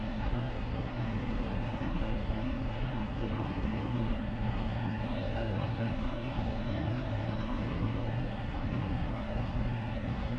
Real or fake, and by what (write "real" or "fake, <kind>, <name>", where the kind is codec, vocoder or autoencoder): fake, codec, SNAC